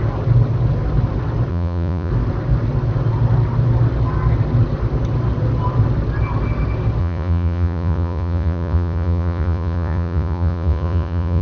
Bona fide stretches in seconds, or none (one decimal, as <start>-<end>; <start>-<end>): 0.0-1.5; 2.1-7.0